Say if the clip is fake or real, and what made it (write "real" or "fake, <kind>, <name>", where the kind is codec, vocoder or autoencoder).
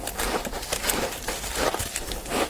fake, vocoder, BigVGAN v2